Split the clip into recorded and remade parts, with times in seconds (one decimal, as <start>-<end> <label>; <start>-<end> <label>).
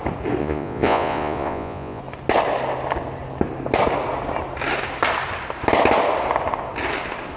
0.0-0.4 recorded; 0.4-2.0 remade; 2.0-7.4 recorded